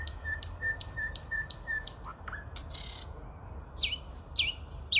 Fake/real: fake